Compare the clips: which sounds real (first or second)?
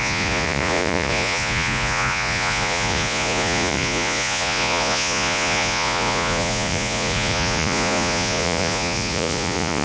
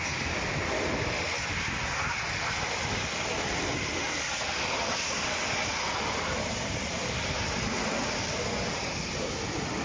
second